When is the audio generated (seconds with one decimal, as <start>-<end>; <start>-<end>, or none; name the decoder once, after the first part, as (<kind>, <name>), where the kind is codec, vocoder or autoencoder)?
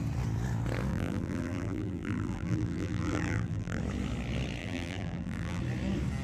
0.9-3.8 (vocoder, BigVGAN v2); 4.6-5.6